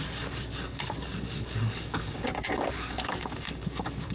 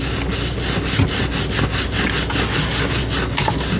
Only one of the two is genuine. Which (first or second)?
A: second